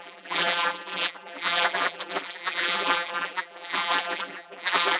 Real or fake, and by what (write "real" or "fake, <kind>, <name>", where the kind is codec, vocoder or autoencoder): fake, vocoder, BigVGAN v2